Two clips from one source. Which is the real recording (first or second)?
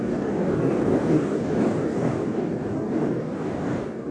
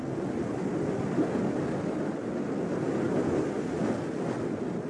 second